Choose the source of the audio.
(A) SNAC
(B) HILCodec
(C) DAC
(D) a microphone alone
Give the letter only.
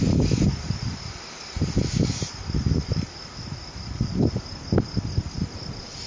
D